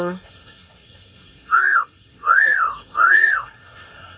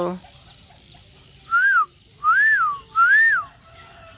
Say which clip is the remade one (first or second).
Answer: first